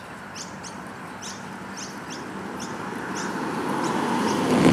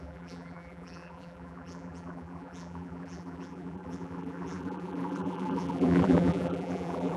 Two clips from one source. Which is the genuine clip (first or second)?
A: first